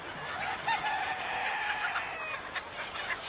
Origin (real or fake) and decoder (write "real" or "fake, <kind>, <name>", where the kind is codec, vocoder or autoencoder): real